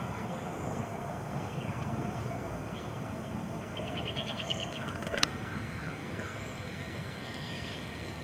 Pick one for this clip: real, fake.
fake